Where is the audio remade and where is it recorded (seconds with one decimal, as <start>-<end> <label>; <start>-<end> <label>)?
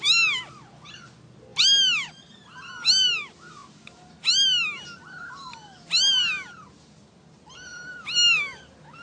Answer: 0.0-9.0 recorded